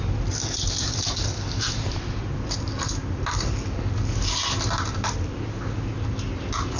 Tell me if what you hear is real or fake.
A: real